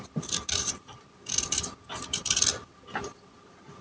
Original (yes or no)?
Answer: yes